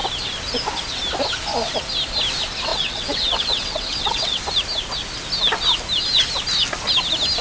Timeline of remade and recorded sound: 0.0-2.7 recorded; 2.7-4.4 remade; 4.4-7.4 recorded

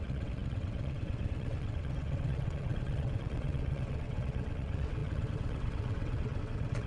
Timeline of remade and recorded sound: 0.0-6.9 remade

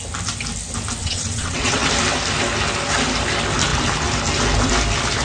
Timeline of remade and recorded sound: 0.0-1.0 recorded; 1.0-1.9 remade; 1.9-5.2 recorded